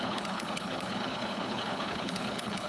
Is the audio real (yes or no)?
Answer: no